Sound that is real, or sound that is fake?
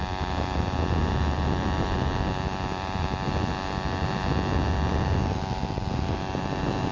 real